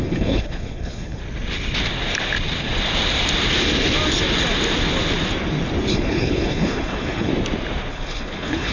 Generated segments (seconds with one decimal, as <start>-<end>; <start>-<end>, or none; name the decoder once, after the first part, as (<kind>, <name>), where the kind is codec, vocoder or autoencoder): 0.0-1.2 (codec, HILCodec); 5.9-7.3; 7.9-8.7